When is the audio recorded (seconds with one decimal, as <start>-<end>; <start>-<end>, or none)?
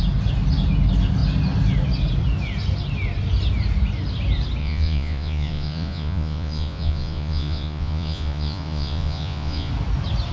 0.0-4.6; 9.7-10.3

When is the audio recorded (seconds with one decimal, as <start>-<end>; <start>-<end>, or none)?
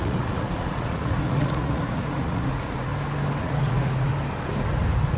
2.9-3.4; 4.1-5.2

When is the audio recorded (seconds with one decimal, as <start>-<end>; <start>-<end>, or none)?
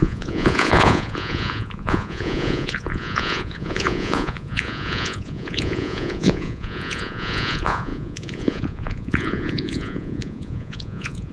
none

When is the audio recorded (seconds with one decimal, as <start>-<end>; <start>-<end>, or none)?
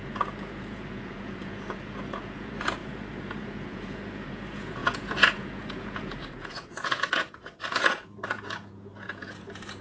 none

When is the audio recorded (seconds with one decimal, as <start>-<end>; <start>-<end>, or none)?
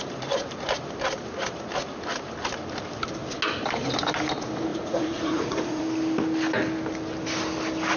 0.0-4.7; 5.8-8.0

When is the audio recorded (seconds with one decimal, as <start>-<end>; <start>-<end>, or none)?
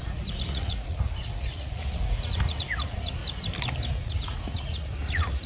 3.2-3.9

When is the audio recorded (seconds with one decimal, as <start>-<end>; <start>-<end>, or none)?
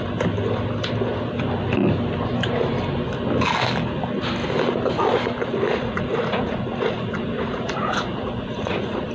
0.0-5.5